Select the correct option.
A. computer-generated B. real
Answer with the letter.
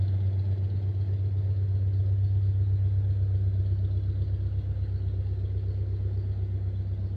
B